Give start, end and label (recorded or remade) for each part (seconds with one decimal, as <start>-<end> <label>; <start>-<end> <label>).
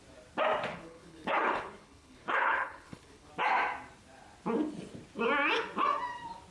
0.0-0.7 recorded; 0.7-3.3 remade; 3.3-6.5 recorded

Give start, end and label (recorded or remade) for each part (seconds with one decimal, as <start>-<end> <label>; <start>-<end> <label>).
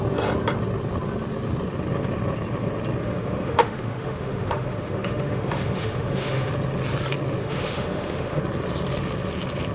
0.0-3.0 recorded; 3.0-6.5 remade; 6.5-7.4 recorded; 7.4-8.4 remade; 8.4-9.7 recorded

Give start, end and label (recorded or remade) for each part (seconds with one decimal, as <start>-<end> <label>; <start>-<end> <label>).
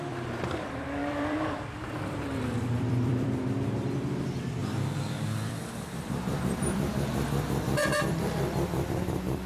0.0-9.5 remade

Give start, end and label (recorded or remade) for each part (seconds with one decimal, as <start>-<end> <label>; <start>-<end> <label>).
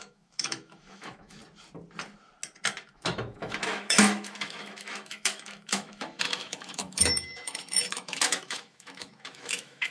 0.0-1.4 remade; 1.4-2.9 recorded; 2.9-9.9 remade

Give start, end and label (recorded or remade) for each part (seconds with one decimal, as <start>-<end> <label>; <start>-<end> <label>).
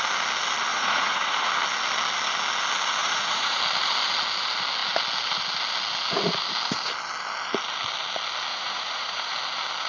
0.0-0.7 recorded; 0.7-1.5 remade; 1.5-3.0 recorded; 3.0-3.6 remade; 3.6-8.5 recorded; 8.5-9.3 remade; 9.3-9.9 recorded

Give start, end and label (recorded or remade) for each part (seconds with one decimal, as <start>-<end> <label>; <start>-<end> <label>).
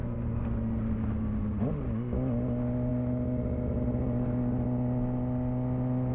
0.0-6.1 recorded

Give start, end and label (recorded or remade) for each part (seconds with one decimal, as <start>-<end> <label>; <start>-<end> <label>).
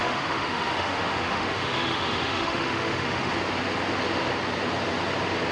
0.0-3.3 remade; 3.3-5.5 recorded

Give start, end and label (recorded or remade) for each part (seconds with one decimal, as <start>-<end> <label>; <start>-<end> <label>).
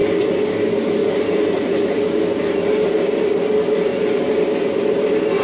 0.0-1.0 recorded; 1.0-2.0 remade; 2.0-3.9 recorded; 3.9-4.8 remade; 4.8-5.4 recorded